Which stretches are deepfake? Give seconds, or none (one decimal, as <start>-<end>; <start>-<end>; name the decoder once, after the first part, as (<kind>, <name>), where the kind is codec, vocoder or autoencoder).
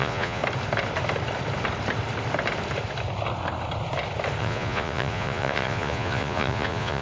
0.0-0.4 (vocoder, Vocos); 4.4-7.0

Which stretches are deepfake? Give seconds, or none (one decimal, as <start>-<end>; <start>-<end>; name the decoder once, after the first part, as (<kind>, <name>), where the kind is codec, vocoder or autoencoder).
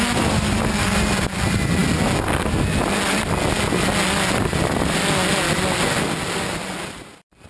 none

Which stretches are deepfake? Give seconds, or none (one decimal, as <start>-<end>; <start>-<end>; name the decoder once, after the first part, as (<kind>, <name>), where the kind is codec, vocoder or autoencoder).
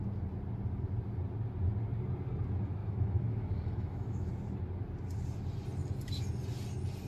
2.8-4.3 (autoencoder, DAC-VAE)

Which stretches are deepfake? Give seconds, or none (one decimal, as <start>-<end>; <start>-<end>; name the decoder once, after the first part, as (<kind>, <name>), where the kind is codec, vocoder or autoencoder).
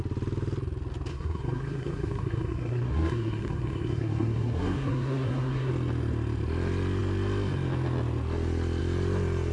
1.1-5.7 (codec, SNAC)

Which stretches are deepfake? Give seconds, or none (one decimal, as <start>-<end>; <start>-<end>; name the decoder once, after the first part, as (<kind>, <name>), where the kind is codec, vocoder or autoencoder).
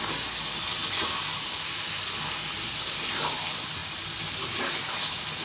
none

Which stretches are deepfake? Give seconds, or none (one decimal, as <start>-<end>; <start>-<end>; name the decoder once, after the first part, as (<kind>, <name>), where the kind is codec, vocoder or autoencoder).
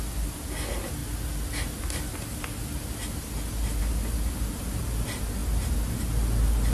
none